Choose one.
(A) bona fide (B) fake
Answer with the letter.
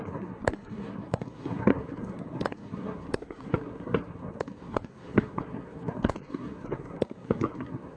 B